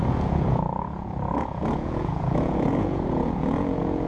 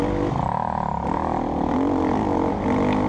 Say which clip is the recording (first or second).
second